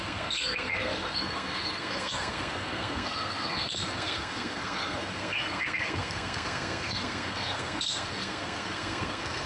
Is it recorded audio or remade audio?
remade